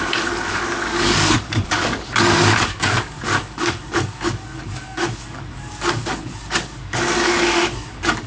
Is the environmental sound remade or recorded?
remade